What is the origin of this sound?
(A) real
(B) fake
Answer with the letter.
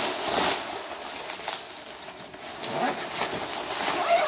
A